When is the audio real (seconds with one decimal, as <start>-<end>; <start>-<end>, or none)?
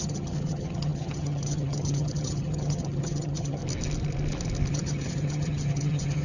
3.6-4.7